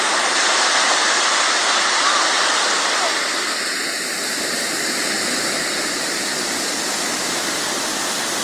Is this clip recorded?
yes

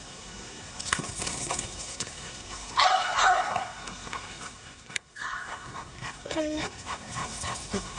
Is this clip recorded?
no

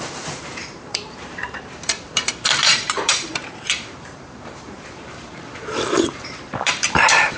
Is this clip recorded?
no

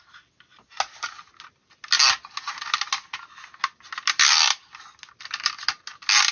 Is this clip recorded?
yes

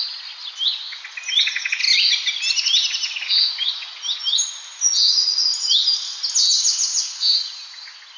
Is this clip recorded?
yes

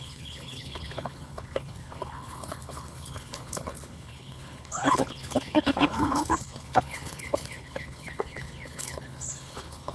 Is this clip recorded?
no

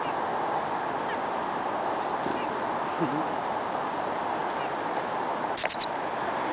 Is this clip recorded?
yes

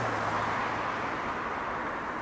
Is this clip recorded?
yes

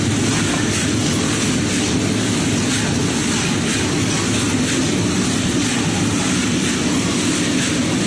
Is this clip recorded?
yes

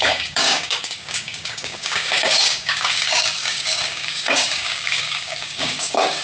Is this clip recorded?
no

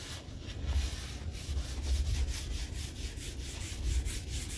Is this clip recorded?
yes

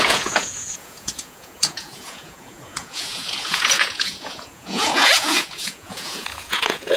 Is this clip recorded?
no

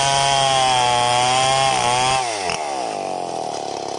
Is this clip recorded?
yes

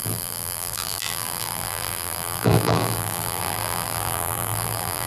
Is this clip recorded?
no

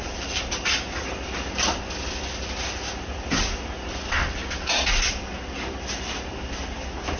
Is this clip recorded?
yes